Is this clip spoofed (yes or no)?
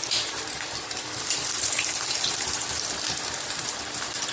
yes